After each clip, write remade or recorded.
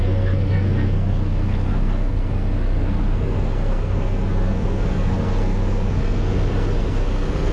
remade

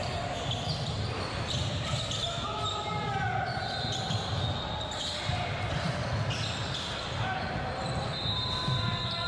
recorded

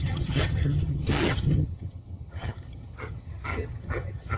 remade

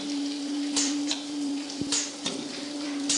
remade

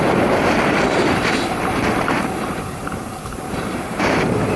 remade